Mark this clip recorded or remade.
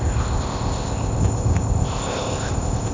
remade